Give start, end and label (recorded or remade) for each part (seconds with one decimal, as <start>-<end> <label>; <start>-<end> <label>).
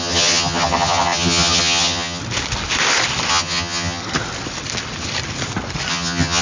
0.0-2.2 remade; 2.2-3.3 recorded; 3.3-4.0 remade; 4.0-5.9 recorded; 5.9-6.4 remade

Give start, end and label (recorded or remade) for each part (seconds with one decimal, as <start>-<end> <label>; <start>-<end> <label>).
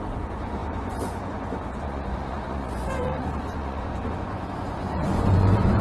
0.0-5.8 remade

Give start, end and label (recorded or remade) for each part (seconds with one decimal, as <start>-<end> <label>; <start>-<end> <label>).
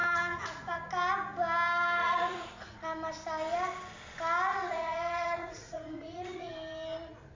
0.0-0.9 remade; 0.9-2.0 recorded; 2.0-2.8 remade; 2.8-4.5 recorded; 4.5-6.5 remade; 6.5-7.3 recorded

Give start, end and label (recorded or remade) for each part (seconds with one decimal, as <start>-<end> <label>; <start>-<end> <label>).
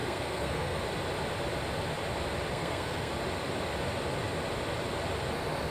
0.0-0.8 remade; 0.8-2.5 recorded; 2.5-3.1 remade; 3.1-5.7 recorded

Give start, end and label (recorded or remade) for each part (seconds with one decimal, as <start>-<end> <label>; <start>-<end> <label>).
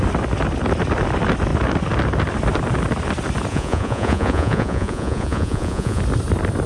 0.0-3.5 recorded; 3.5-6.0 remade; 6.0-6.7 recorded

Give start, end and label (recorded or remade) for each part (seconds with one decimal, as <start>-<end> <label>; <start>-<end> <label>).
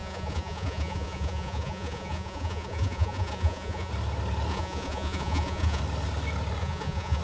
0.0-3.9 remade; 3.9-4.5 recorded; 4.5-5.8 remade; 5.8-6.6 recorded; 6.6-7.2 remade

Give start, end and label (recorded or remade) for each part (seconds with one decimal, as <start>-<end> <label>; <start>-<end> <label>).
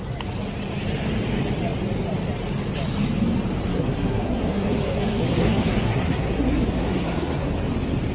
0.0-3.7 recorded; 3.7-7.5 remade; 7.5-8.1 recorded